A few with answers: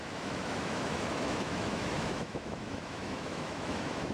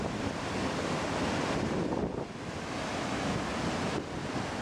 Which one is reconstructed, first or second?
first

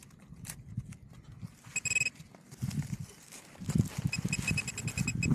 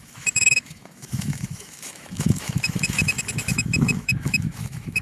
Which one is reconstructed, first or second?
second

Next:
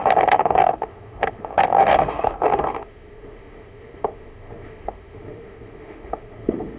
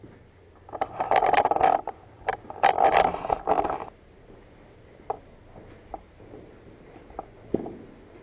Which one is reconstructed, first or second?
first